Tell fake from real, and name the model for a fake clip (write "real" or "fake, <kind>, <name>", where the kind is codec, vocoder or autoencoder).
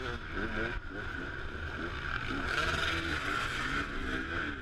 real